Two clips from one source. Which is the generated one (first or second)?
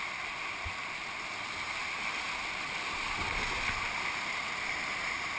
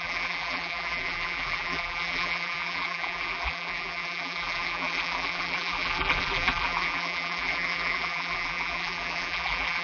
second